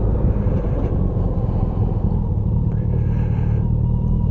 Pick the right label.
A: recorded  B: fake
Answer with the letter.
B